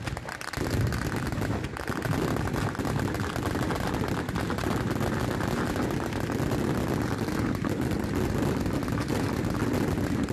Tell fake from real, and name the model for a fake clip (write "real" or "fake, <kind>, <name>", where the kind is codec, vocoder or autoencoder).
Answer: real